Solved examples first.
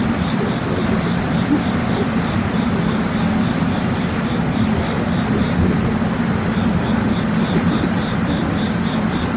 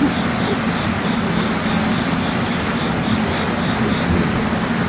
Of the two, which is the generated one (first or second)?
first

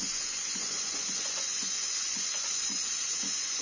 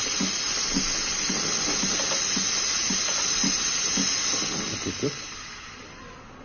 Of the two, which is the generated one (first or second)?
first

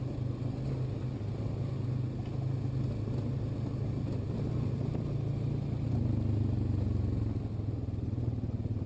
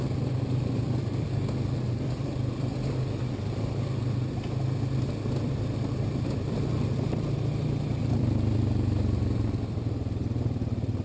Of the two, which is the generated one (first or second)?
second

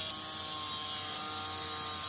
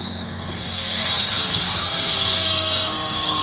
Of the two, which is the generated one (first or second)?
second